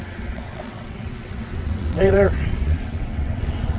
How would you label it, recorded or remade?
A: remade